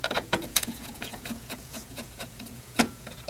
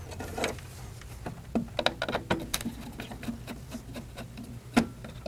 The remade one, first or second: first